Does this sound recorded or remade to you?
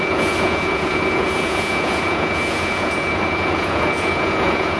remade